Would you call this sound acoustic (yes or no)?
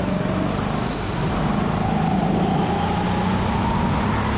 yes